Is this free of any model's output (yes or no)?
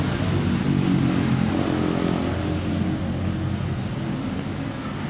yes